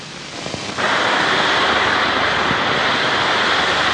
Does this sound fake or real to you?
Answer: real